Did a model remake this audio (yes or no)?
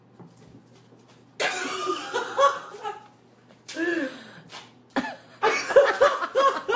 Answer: no